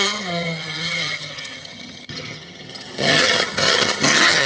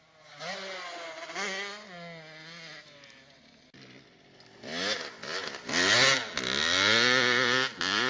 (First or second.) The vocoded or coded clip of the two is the first